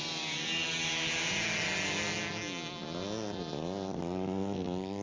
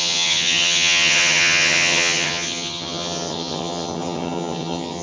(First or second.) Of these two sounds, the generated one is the second